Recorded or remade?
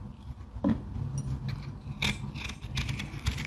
recorded